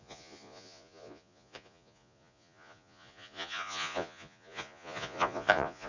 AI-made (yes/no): yes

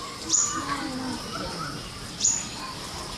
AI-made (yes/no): no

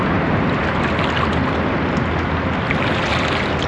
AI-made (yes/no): no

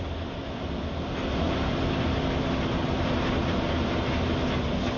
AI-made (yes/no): no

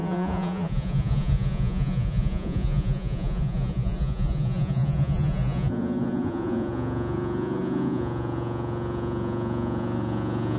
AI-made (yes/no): yes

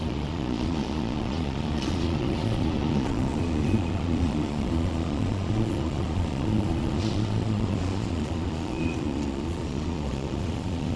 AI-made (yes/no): yes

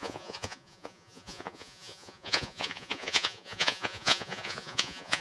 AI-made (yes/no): yes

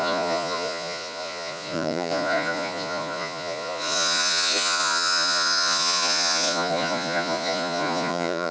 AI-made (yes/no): yes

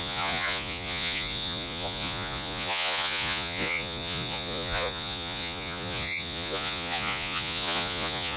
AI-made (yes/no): yes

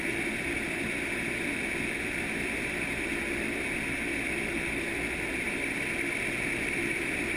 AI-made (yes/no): no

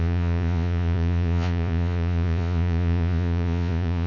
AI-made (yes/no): yes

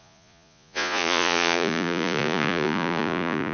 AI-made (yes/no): yes